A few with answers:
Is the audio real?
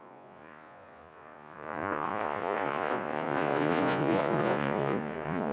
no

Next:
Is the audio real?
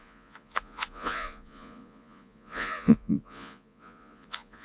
no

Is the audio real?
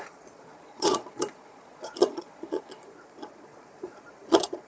no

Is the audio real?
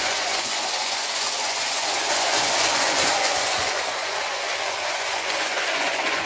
no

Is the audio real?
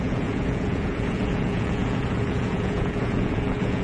no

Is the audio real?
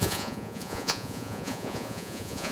no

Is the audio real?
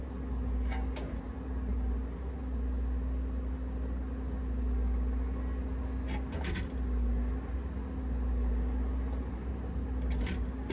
yes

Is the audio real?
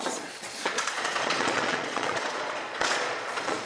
no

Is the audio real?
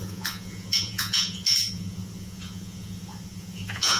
no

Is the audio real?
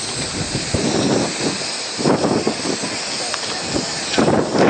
yes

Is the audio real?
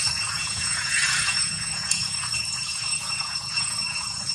no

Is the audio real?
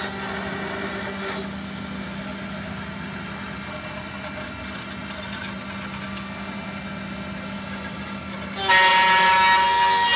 yes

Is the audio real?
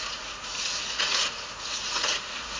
no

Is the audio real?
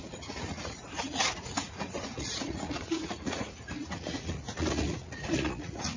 no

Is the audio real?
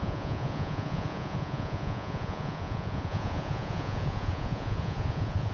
no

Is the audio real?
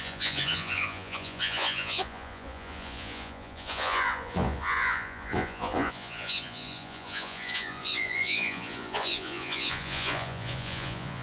no